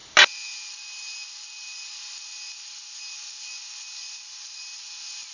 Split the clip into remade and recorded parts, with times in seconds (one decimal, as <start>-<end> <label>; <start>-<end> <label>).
0.0-5.3 recorded